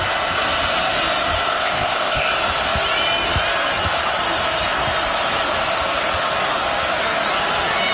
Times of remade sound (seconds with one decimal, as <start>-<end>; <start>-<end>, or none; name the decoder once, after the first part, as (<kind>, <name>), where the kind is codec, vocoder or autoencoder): 1.5-2.3 (codec, ZipCodec)